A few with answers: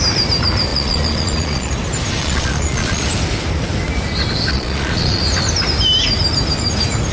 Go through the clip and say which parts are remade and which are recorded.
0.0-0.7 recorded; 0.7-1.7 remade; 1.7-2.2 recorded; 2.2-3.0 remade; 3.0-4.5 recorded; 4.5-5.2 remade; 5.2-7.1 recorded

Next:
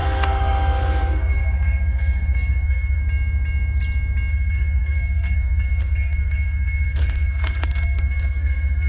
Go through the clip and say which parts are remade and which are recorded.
0.0-3.0 remade; 3.0-4.3 recorded; 4.3-8.9 remade

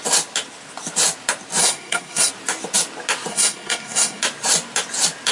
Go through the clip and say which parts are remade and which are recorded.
0.0-1.6 recorded; 1.6-2.3 remade; 2.3-3.3 recorded; 3.3-4.2 remade; 4.2-5.3 recorded